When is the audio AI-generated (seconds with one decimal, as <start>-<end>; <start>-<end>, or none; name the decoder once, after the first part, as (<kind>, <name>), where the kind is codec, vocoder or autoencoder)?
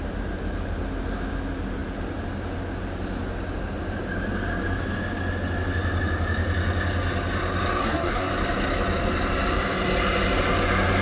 7.8-8.3 (codec, SNAC)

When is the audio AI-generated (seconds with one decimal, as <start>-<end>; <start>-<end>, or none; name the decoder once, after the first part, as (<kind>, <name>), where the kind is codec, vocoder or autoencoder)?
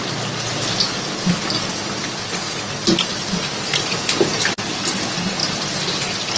0.0-0.8 (vocoder, BigVGAN v2); 3.1-3.9; 5.4-6.4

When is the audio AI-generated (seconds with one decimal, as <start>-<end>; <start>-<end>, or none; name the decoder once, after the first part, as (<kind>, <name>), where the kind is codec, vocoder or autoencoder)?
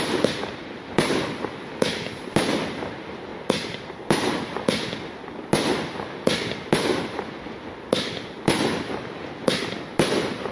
none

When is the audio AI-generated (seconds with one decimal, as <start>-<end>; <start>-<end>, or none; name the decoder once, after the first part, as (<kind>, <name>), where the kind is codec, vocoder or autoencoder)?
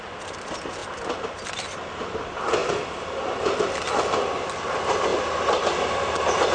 none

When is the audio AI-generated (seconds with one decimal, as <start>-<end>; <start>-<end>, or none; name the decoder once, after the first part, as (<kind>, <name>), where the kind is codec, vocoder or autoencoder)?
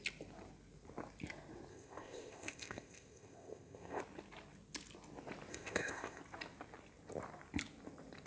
1.7-4.0 (codec, ZipCodec); 5.5-6.2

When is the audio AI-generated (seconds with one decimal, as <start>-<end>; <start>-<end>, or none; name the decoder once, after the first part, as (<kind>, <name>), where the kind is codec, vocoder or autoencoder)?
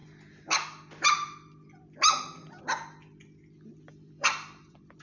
3.9-5.0 (vocoder, BigVGAN v2)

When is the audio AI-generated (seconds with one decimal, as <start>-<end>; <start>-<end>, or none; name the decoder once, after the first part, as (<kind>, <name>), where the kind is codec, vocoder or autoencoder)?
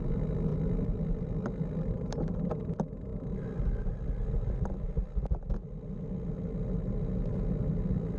none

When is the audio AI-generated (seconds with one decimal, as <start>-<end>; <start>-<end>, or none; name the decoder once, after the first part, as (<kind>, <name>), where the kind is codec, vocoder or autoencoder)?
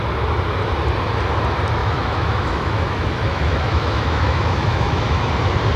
1.8-5.3 (autoencoder, DAC-VAE)